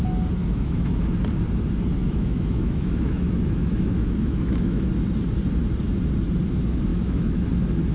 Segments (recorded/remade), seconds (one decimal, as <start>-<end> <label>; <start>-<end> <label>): 0.0-0.4 recorded; 0.4-1.0 remade; 1.0-2.0 recorded; 2.0-4.9 remade; 4.9-6.9 recorded; 6.9-7.5 remade; 7.5-7.9 recorded